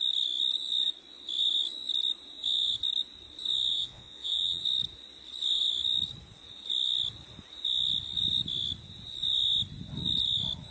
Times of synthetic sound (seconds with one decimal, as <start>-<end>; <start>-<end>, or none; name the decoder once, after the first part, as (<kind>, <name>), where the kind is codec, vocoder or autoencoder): 3.7-4.6 (vocoder, Vocos)